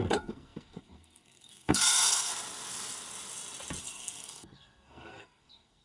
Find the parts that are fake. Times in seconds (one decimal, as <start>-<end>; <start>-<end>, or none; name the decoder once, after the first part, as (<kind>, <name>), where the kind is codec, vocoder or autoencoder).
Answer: 0.0-2.3 (codec, SNAC); 3.8-5.8